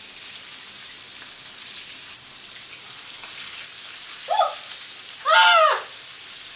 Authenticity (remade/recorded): recorded